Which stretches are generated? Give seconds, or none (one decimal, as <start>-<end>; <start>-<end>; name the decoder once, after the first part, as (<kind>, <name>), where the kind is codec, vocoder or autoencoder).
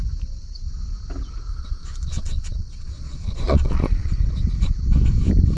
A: 1.5-4.2 (vocoder, Vocos)